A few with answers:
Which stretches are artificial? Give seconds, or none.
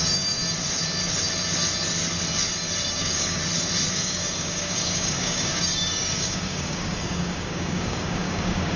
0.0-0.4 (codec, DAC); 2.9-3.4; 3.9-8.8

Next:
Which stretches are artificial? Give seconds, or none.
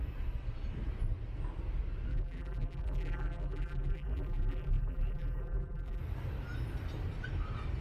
2.1-6.0 (vocoder, BigVGAN v2)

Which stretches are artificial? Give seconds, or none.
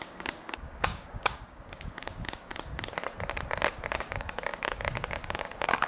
0.0-2.5 (codec, DAC); 4.0-5.9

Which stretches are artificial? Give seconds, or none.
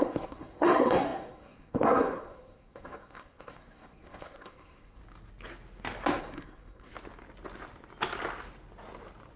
0.0-5.0 (codec, SNAC); 6.2-6.9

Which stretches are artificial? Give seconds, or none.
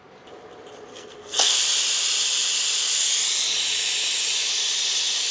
0.9-1.6 (codec, SNAC)